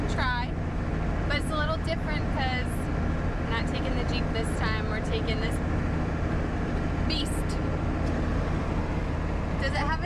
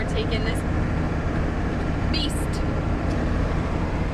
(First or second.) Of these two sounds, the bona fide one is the first